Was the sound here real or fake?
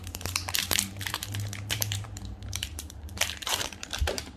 fake